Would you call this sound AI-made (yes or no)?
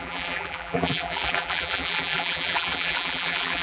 yes